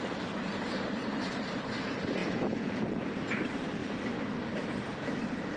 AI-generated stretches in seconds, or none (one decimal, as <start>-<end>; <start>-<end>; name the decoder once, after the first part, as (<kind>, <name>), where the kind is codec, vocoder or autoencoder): 2.2-3.2 (vocoder, Vocos)